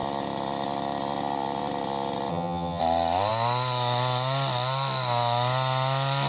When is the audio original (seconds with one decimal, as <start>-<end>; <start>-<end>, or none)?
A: 0.0-2.3; 2.8-6.3